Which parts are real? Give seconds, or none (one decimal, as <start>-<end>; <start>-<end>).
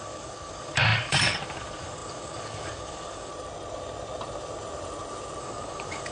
3.3-5.4